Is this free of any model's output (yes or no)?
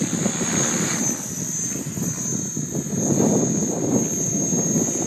yes